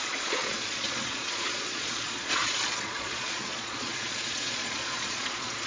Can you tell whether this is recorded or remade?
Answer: remade